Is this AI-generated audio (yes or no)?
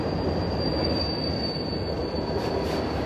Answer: no